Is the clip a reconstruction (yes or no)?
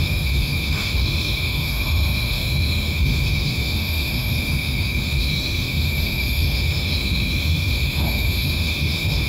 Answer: yes